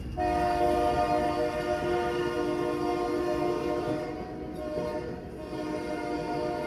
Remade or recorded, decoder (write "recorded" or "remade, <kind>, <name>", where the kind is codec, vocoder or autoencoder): recorded